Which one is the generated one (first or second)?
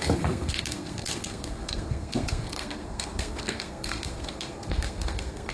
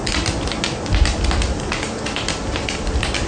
first